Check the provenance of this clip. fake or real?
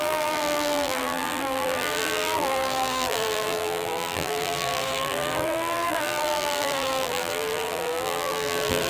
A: fake